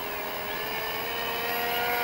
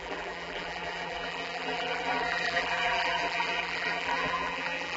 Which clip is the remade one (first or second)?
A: second